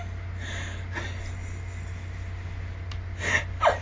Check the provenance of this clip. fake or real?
real